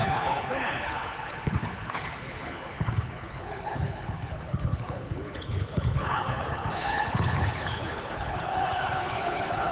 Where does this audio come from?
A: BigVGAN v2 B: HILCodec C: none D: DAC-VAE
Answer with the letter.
B